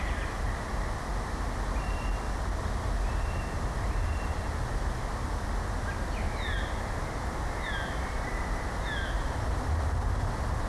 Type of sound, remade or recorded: recorded